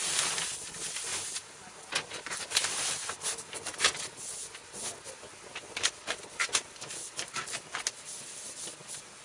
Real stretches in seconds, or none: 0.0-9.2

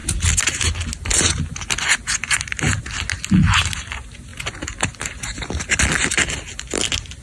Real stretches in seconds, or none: 0.0-7.2